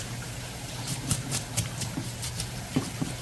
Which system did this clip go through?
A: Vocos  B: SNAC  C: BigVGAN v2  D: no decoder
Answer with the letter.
C